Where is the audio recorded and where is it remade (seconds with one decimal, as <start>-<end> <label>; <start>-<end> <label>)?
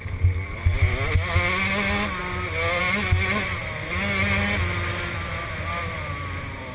0.0-6.7 recorded